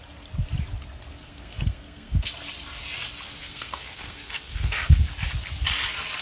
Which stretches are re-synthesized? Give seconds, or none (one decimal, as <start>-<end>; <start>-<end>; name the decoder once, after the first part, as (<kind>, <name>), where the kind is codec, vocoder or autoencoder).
1.1-2.3 (codec, SNAC); 3.4-5.0